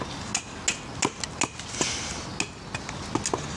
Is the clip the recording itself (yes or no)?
yes